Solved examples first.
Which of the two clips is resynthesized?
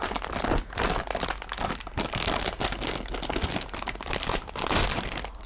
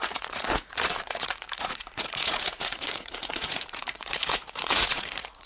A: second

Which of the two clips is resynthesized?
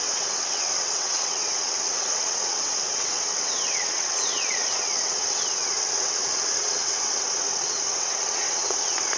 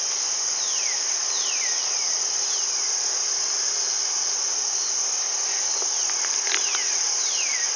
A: first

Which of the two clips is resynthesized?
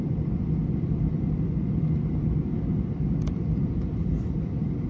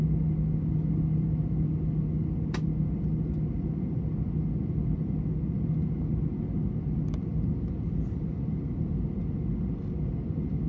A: first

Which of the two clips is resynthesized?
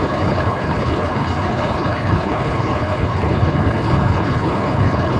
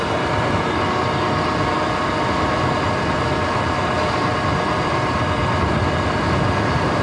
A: first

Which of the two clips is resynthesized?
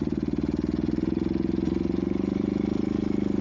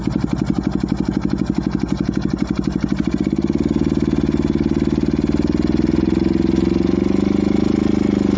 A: first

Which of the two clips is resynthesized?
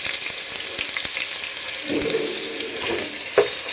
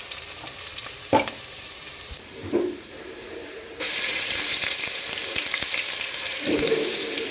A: second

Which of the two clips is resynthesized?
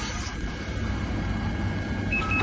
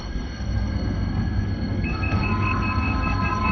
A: second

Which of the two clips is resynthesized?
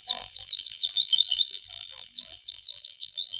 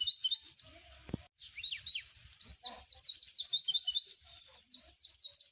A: first